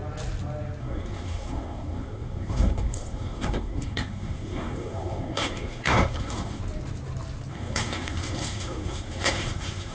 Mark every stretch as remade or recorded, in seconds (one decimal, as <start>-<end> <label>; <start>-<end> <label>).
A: 0.0-0.8 recorded; 0.8-6.6 remade; 6.6-7.5 recorded; 7.5-9.9 remade